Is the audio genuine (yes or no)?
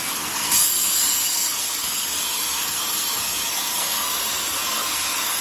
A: no